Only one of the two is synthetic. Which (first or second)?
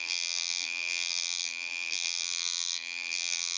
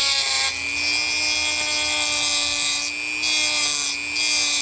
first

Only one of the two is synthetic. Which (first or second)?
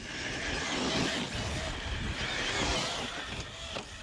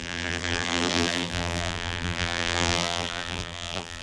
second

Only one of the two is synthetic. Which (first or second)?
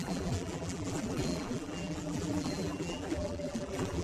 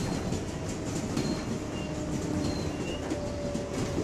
first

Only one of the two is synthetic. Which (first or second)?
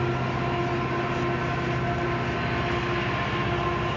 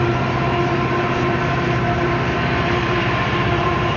second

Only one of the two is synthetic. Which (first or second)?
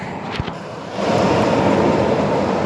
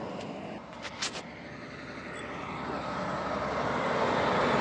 first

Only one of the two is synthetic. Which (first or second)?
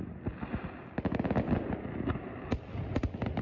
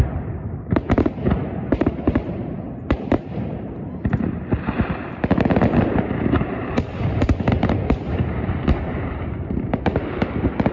second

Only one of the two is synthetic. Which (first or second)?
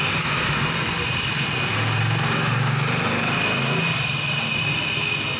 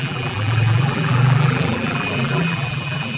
second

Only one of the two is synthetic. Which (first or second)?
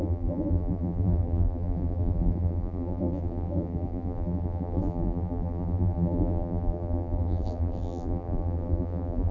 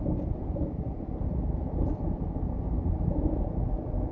first